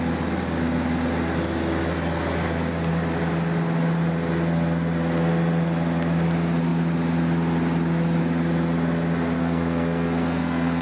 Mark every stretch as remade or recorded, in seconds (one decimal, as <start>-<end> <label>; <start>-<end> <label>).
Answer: 0.0-9.4 recorded; 9.4-10.8 remade